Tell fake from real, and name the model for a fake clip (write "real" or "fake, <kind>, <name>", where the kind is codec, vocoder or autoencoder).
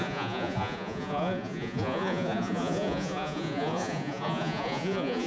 fake, vocoder, Vocos